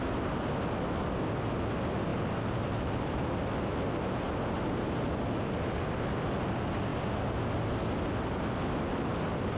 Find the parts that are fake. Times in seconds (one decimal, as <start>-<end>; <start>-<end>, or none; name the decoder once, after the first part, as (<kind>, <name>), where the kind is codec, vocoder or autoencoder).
2.1-3.3 (vocoder, BigVGAN v2)